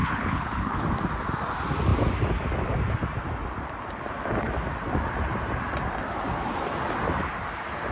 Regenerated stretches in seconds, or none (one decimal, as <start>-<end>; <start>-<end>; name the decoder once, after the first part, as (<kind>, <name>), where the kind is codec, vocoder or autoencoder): 0.0-0.9 (codec, HILCodec)